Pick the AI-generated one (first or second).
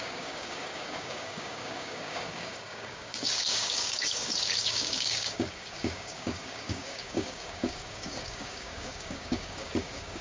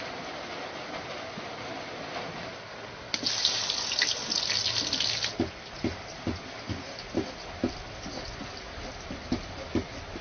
first